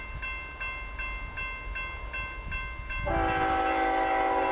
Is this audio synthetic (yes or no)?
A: no